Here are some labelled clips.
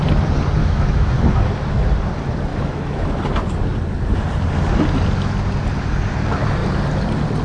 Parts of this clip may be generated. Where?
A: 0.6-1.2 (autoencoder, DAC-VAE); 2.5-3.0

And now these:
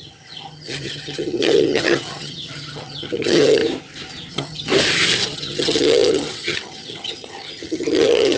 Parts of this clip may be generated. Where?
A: 0.0-3.6 (vocoder, HiFi-GAN); 4.3-4.7; 5.3-8.4

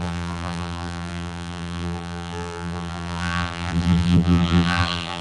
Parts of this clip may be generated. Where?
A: 0.0-5.2 (vocoder, BigVGAN v2)

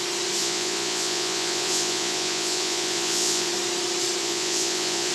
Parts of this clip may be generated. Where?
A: 0.4-3.5 (vocoder, Vocos); 4.2-5.1